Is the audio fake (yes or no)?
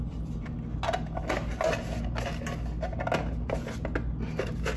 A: no